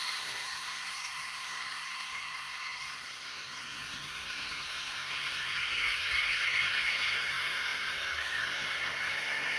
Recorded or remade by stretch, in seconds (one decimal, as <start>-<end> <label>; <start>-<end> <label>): 0.0-9.6 remade

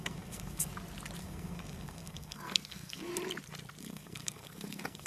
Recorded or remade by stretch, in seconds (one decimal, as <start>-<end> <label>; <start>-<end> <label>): 0.0-0.7 remade; 0.7-1.2 recorded; 1.2-3.1 remade; 3.1-3.8 recorded; 3.8-5.1 remade

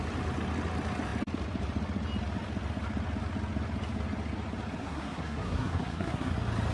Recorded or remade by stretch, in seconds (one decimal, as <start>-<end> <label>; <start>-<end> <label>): 0.0-4.8 recorded; 4.8-6.3 remade; 6.3-6.7 recorded

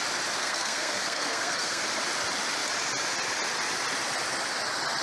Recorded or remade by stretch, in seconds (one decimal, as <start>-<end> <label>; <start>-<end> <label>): 0.0-0.4 recorded; 0.4-1.8 remade; 1.8-5.0 recorded

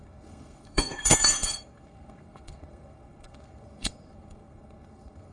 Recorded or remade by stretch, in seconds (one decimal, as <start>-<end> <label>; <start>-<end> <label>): 0.0-5.3 remade